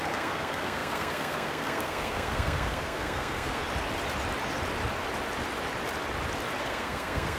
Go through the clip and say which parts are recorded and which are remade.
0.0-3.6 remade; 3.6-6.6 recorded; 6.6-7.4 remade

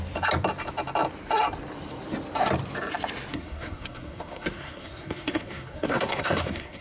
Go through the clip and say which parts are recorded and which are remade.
0.0-3.3 recorded; 3.3-6.8 remade

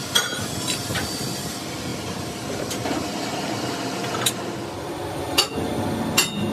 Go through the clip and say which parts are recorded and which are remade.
0.0-0.9 recorded; 0.9-1.5 remade; 1.5-1.9 recorded; 1.9-4.2 remade; 4.2-6.5 recorded